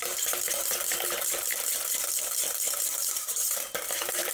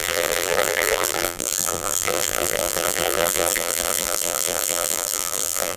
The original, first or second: first